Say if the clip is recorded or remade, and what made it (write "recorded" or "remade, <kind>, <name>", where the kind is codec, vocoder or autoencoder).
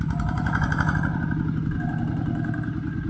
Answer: recorded